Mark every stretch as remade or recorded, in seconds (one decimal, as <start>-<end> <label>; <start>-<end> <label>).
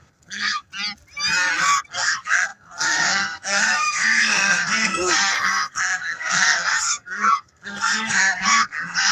0.0-0.7 remade; 0.7-1.9 recorded; 1.9-9.1 remade